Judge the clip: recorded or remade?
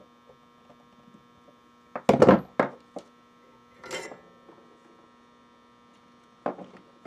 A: recorded